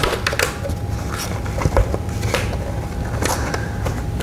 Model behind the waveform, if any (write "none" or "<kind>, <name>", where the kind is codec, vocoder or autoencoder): none